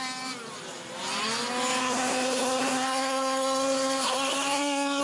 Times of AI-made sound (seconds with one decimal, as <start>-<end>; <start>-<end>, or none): 1.8-5.0